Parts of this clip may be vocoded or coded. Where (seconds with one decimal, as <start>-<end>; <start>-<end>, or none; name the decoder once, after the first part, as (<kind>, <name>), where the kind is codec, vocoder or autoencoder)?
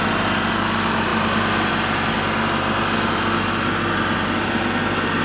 none